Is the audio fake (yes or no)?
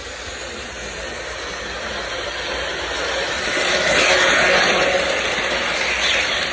no